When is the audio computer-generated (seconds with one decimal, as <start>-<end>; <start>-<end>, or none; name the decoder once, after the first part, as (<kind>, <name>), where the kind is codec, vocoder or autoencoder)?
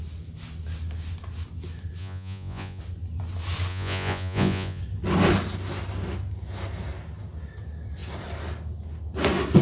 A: 2.0-2.8 (vocoder, Vocos); 3.7-4.8